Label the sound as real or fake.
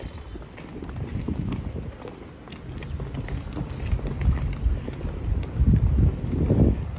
real